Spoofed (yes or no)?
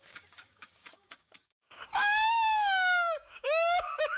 yes